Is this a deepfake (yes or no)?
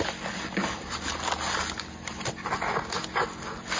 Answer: no